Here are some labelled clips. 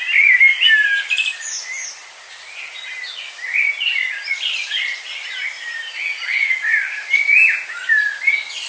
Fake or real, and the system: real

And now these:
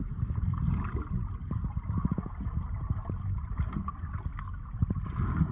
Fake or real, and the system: real